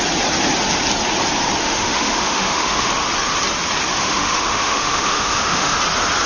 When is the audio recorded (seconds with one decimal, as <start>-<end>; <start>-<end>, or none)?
0.0-1.6; 2.9-4.0; 5.8-6.3